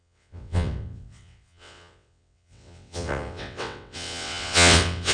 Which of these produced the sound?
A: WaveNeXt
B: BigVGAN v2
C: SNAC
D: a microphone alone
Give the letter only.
A